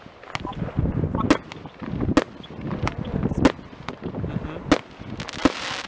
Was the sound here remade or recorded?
recorded